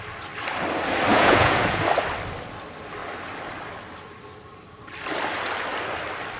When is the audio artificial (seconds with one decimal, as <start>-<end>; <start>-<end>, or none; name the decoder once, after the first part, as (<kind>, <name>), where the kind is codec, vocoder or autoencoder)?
1.1-1.8 (vocoder, Vocos)